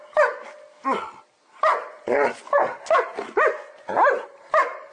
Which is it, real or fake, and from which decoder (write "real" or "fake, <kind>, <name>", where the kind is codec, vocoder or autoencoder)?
real